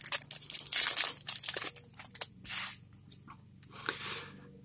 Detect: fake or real real